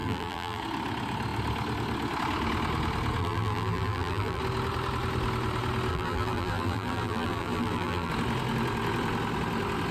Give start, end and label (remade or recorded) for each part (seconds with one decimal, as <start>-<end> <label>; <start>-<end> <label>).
0.0-0.6 remade; 0.6-3.2 recorded; 3.2-4.4 remade; 4.4-5.9 recorded; 5.9-8.1 remade; 8.1-9.9 recorded